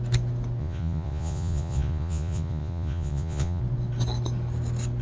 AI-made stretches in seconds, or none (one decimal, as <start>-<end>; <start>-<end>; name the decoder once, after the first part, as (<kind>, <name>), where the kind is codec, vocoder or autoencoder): 0.6-3.6 (vocoder, Vocos)